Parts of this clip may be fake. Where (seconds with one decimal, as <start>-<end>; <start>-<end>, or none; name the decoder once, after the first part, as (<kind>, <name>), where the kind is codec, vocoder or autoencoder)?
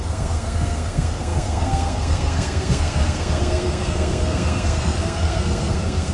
0.0-6.1 (codec, SNAC)